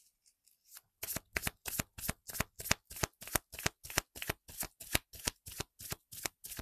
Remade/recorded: recorded